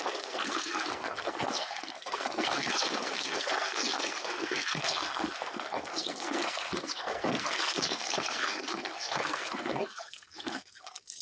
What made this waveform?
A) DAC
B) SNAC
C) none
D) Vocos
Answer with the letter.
B